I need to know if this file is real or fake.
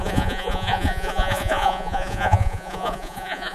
fake